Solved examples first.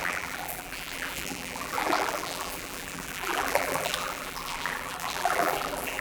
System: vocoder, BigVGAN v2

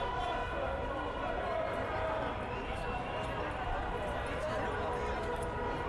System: none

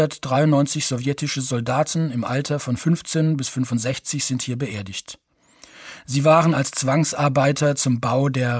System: vocoder, BigVGAN v2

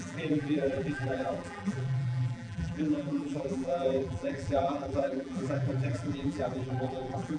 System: vocoder, BigVGAN v2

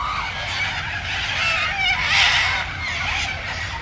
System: vocoder, BigVGAN v2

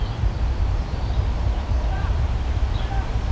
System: vocoder, BigVGAN v2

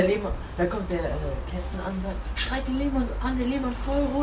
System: none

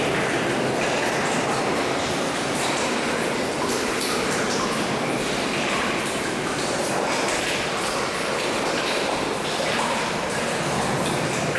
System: vocoder, BigVGAN v2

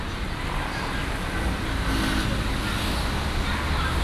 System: none